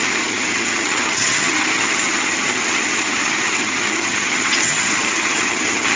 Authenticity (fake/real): fake